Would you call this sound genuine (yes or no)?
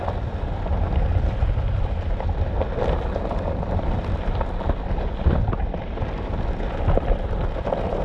yes